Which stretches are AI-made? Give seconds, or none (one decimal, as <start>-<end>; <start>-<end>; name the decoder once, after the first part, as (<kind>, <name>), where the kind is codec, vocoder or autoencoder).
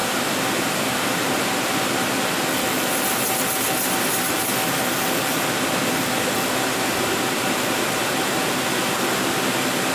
none